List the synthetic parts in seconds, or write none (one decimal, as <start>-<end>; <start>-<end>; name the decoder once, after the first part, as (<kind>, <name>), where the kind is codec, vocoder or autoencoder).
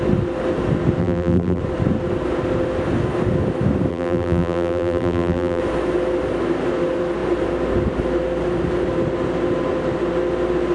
1.0-1.6 (vocoder, BigVGAN v2); 3.9-5.6